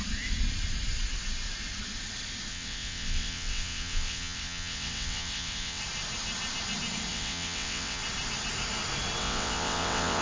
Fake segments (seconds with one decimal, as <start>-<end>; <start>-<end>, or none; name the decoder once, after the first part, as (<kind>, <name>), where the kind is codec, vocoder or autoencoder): 2.5-5.8 (vocoder, WaveNeXt); 7.1-8.0; 9.2-10.2